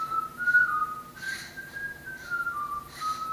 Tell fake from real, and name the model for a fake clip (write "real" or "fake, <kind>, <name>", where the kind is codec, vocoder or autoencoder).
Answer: fake, vocoder, BigVGAN v2